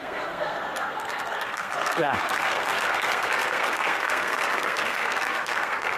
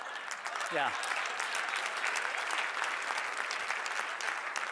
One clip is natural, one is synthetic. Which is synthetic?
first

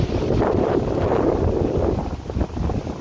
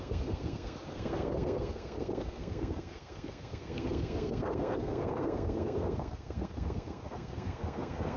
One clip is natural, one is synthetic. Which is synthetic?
second